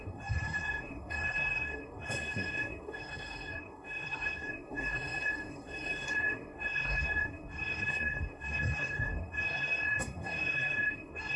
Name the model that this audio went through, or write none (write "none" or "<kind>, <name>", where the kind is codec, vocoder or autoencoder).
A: codec, SNAC